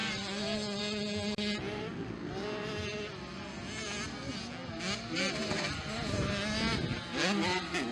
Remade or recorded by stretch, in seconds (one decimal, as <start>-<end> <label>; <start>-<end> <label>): 0.0-7.9 recorded